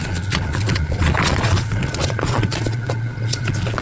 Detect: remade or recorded remade